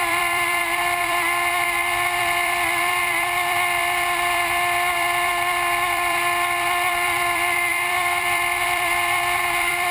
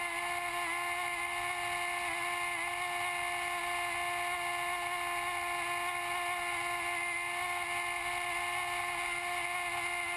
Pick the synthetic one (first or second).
first